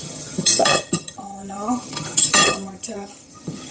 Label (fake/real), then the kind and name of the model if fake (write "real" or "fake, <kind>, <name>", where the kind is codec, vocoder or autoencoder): fake, vocoder, HiFi-GAN